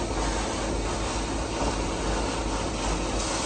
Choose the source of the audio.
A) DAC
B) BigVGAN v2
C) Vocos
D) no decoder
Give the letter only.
D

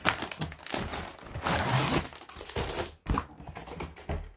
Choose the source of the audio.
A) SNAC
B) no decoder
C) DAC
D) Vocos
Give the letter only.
B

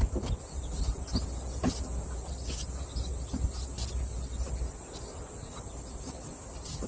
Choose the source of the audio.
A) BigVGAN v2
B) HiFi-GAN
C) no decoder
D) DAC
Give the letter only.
C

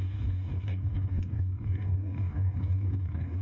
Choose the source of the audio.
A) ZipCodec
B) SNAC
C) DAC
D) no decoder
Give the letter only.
C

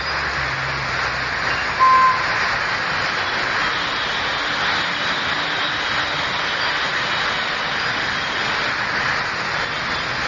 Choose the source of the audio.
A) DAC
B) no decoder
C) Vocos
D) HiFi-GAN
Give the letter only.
B